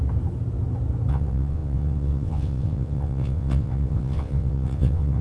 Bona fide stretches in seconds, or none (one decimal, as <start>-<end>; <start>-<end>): 0.0-1.1